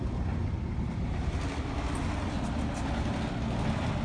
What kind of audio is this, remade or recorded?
recorded